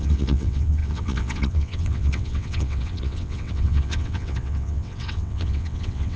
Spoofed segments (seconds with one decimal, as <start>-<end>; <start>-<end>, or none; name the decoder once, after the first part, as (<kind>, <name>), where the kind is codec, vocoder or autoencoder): 0.0-6.2 (vocoder, WaveNeXt)